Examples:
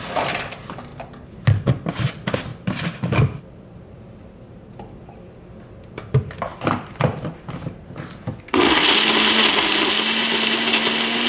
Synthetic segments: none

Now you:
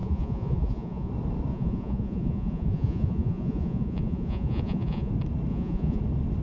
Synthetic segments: 0.0-1.1 (vocoder, Vocos); 1.5-5.1; 5.5-6.0

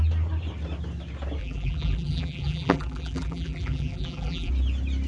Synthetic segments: 1.4-4.5 (vocoder, BigVGAN v2)